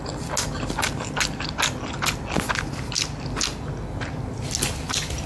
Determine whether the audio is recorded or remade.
recorded